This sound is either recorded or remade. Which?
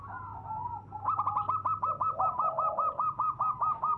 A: recorded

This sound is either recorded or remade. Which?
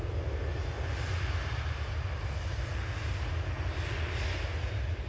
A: recorded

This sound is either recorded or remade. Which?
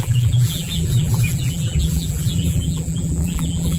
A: remade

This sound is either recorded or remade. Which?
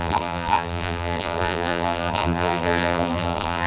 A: remade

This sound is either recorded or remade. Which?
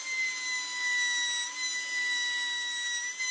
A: recorded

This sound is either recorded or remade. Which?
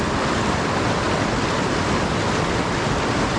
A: recorded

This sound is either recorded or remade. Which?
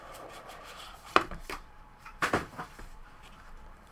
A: remade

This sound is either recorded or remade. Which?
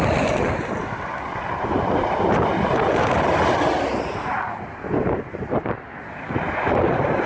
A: recorded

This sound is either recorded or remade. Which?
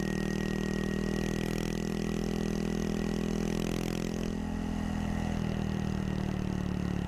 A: recorded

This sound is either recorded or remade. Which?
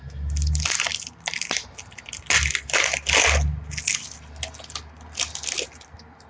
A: recorded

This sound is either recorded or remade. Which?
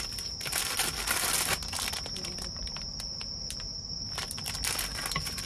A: remade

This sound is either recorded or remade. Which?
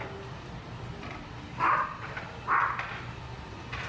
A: recorded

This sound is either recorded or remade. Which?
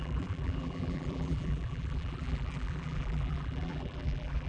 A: remade